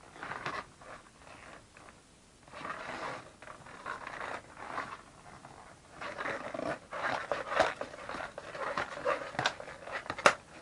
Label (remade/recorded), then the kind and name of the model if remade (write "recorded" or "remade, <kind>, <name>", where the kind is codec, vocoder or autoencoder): recorded